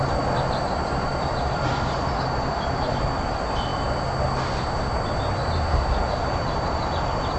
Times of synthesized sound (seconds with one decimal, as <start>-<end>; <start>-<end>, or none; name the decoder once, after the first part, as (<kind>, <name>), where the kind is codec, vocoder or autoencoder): 0.0-3.7 (vocoder, BigVGAN v2); 6.2-7.4